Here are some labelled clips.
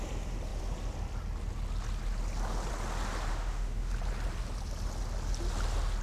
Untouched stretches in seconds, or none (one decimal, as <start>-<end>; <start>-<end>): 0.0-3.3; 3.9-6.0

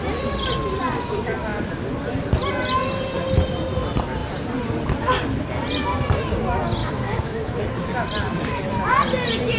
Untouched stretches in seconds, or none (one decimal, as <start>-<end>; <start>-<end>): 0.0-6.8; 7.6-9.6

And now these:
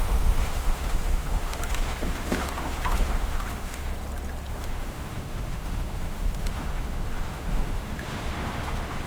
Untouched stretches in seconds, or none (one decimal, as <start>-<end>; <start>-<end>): 3.9-4.5

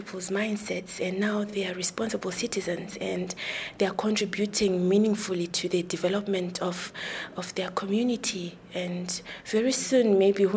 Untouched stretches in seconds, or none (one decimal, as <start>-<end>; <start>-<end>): 0.0-10.6

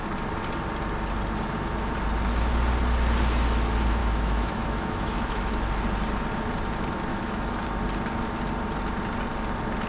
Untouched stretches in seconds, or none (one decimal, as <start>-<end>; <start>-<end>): 0.0-4.0; 5.6-7.1; 7.6-9.9